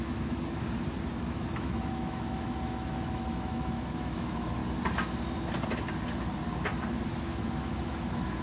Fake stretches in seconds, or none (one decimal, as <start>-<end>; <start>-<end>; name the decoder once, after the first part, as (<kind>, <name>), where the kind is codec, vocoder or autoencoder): 0.0-0.6 (autoencoder, DAC-VAE); 1.2-4.6; 7.2-8.4